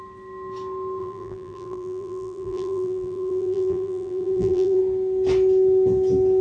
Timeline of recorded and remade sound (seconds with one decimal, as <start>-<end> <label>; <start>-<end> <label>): 0.0-1.0 recorded; 1.0-4.8 remade; 4.8-6.4 recorded